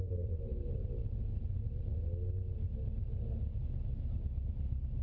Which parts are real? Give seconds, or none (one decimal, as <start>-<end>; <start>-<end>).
0.0-5.0